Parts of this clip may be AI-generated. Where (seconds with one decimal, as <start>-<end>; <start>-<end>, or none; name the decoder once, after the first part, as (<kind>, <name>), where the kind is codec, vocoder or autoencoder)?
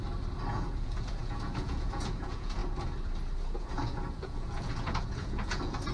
0.5-2.6 (vocoder, Vocos); 3.6-5.9